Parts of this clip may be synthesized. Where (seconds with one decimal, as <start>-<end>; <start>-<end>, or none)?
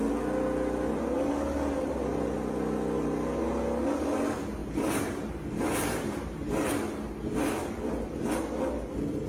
4.6-6.5